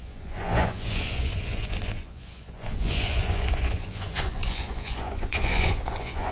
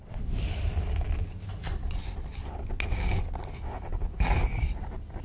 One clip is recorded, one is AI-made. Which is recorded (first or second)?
second